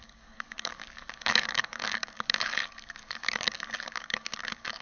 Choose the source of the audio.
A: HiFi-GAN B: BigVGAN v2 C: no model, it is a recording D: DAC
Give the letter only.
D